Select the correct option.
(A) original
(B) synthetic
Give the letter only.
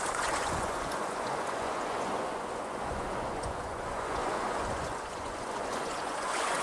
B